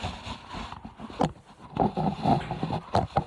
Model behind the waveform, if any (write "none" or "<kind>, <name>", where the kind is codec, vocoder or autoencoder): none